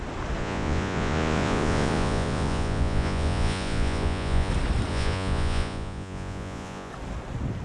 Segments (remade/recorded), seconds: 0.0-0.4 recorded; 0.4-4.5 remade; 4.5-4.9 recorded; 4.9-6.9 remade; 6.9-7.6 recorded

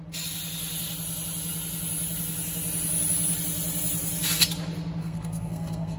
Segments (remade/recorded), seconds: 0.0-5.0 recorded; 5.0-6.0 remade